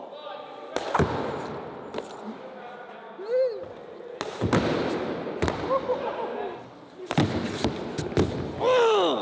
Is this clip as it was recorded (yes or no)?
yes